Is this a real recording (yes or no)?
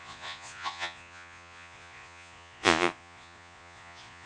no